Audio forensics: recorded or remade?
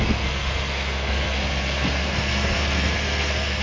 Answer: remade